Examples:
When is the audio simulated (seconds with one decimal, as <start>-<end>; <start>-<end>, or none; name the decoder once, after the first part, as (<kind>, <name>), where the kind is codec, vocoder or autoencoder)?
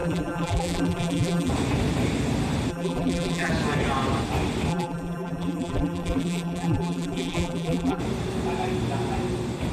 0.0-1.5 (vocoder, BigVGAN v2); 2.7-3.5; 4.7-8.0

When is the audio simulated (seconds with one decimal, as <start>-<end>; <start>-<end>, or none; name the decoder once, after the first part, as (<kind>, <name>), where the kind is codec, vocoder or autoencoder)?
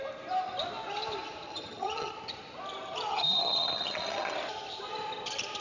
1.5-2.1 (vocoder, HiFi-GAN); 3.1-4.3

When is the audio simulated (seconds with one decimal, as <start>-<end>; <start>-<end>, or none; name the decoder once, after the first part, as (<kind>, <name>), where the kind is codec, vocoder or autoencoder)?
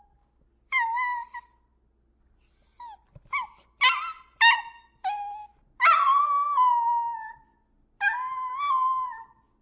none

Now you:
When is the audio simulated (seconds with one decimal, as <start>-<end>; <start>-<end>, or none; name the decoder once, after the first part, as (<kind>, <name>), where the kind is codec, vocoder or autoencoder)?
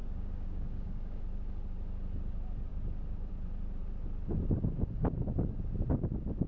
0.0-1.2 (codec, DAC)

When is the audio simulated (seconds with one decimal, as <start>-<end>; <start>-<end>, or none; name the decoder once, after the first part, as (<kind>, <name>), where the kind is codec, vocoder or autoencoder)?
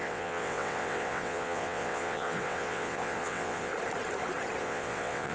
0.0-3.7 (vocoder, WaveNeXt); 4.6-5.3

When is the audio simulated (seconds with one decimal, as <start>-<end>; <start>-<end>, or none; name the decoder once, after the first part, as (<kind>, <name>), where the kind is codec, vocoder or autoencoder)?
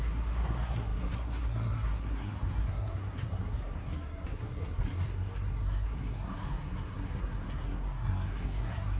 0.0-9.0 (codec, SNAC)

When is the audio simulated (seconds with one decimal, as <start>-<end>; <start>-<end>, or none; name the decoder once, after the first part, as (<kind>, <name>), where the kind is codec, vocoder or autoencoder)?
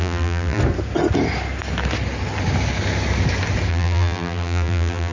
0.0-0.6 (vocoder, BigVGAN v2); 3.7-5.1